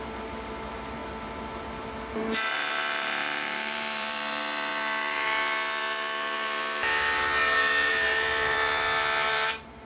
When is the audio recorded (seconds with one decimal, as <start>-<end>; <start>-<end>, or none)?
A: none

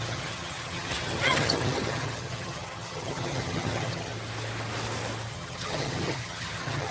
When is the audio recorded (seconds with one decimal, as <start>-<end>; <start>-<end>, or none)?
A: 4.1-5.3

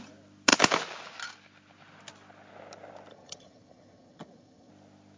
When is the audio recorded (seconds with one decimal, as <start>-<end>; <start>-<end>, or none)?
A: 0.0-3.1; 4.7-5.2

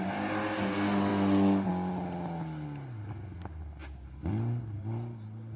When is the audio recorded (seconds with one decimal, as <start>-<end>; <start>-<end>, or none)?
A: 0.0-5.6